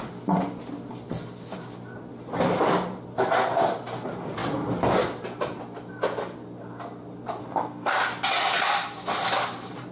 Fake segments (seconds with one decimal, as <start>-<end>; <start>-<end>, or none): 7.4-7.9